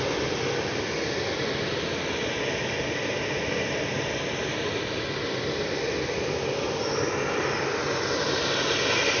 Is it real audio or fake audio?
real